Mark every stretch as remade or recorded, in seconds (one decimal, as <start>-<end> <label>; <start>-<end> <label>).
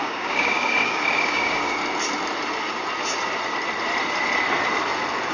0.0-1.8 remade; 1.8-5.3 recorded